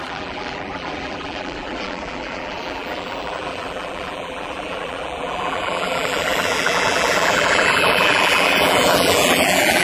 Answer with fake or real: fake